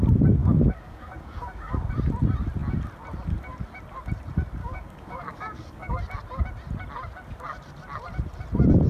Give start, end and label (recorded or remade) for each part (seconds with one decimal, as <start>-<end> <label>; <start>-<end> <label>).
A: 0.0-0.4 recorded; 0.4-1.9 remade; 1.9-4.6 recorded; 4.6-6.0 remade; 6.0-8.9 recorded

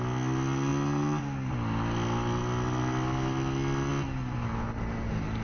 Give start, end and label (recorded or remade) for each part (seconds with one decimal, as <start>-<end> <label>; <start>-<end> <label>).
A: 0.0-5.4 recorded

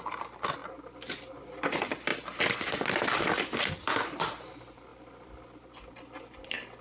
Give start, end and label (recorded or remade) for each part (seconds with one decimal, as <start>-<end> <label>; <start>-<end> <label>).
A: 0.0-6.8 recorded

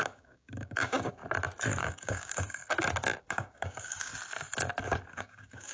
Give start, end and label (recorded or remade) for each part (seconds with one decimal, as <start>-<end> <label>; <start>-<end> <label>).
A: 0.0-1.2 remade; 1.2-1.8 recorded; 1.8-2.6 remade; 2.6-3.2 recorded; 3.2-4.1 remade; 4.1-5.1 recorded; 5.1-5.7 remade